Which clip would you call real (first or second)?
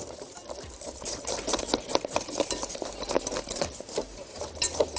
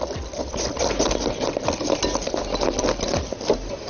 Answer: second